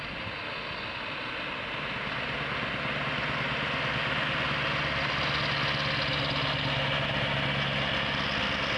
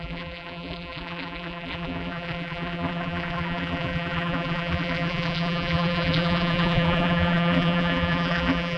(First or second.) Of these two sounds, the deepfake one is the second